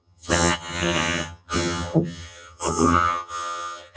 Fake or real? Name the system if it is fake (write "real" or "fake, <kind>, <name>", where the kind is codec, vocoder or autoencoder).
fake, vocoder, HiFi-GAN